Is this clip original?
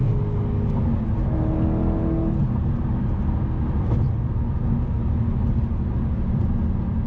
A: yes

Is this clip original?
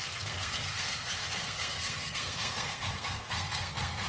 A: no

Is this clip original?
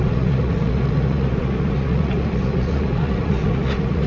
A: no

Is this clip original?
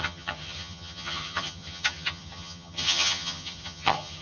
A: no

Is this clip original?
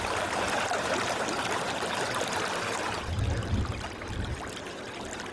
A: yes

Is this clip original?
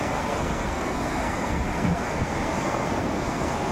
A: no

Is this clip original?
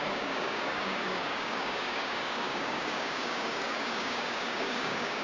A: no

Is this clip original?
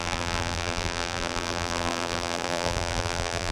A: no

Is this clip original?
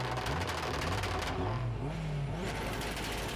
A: yes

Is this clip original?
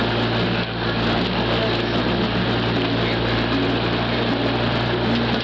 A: yes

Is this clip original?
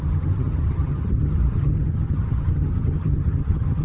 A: no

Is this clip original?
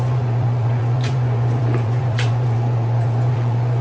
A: no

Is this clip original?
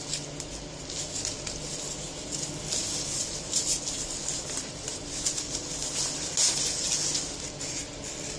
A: yes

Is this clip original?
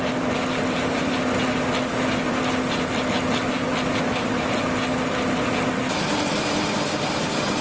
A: yes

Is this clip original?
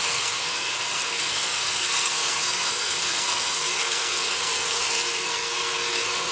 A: no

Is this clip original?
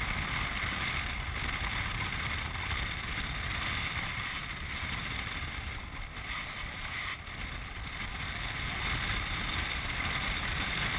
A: no